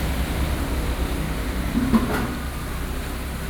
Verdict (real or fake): real